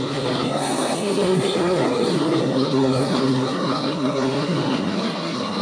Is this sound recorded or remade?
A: remade